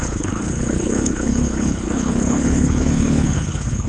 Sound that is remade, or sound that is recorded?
remade